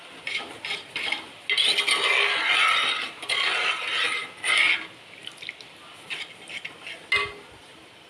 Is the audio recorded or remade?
recorded